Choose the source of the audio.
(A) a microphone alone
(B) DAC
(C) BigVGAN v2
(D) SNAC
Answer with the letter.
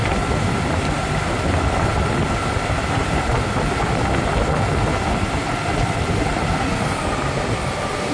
A